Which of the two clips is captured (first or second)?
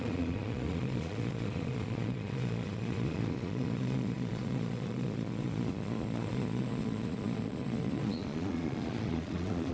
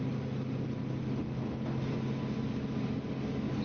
second